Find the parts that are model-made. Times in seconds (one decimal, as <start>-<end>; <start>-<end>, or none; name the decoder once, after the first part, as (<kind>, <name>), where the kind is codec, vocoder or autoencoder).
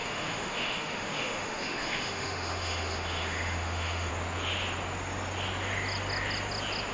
0.0-4.1 (autoencoder, DAC-VAE)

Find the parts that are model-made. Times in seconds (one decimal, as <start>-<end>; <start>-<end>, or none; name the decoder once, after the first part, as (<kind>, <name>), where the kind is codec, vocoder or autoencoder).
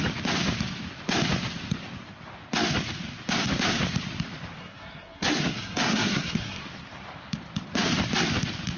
4.6-6.6 (codec, SNAC)